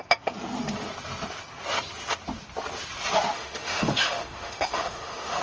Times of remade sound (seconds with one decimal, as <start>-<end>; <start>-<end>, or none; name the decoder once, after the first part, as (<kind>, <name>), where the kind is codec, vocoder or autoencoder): 3.3-5.4 (autoencoder, DAC-VAE)